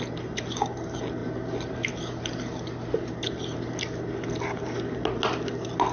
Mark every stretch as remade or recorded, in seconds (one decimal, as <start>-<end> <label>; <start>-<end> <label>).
0.0-5.9 recorded